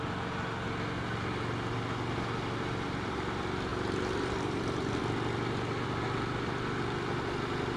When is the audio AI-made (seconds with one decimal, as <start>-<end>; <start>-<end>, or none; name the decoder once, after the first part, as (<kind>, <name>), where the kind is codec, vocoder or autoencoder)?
3.7-5.0 (vocoder, BigVGAN v2)